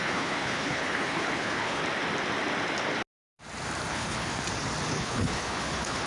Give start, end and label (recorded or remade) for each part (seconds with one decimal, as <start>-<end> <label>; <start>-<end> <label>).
0.0-1.8 remade; 1.8-3.9 recorded; 3.9-4.3 remade; 4.3-4.9 recorded; 4.9-6.1 remade